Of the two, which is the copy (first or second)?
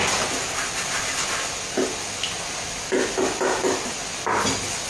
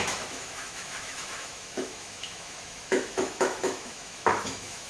second